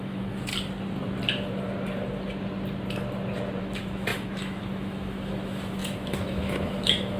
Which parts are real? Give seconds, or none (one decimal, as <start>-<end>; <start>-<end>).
0.5-3.6